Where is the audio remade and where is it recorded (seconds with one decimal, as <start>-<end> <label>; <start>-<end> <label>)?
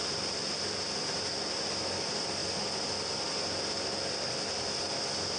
0.0-1.2 remade; 1.2-5.4 recorded